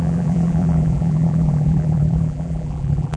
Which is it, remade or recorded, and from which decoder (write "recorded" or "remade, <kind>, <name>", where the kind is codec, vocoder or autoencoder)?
remade, vocoder, BigVGAN v2